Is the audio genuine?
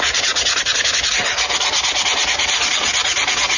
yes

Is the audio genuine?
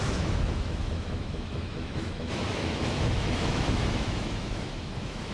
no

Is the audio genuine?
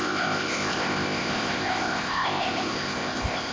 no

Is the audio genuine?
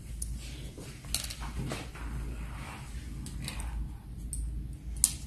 yes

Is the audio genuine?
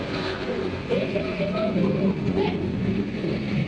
no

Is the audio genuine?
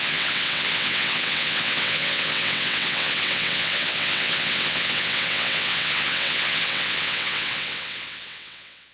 no